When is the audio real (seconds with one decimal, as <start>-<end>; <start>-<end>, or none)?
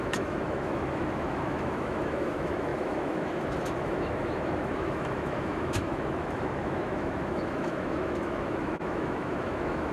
none